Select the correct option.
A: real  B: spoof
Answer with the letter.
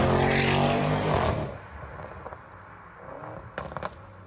A